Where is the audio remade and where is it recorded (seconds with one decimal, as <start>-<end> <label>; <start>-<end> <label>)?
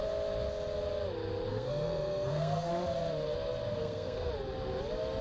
0.0-1.5 recorded; 1.5-2.7 remade; 2.7-3.7 recorded; 3.7-4.3 remade; 4.3-5.2 recorded